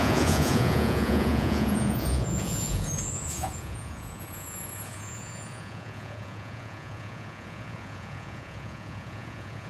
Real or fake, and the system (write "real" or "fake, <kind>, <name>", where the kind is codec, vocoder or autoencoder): fake, vocoder, Vocos